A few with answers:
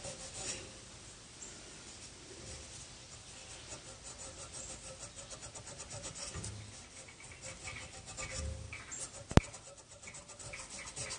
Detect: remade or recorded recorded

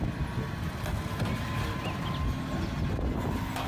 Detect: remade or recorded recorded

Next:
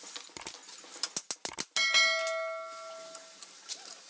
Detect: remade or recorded recorded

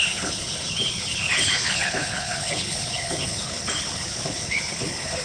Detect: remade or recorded remade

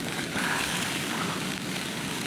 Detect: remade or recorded remade